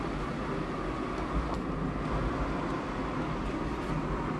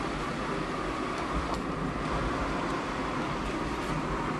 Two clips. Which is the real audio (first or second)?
first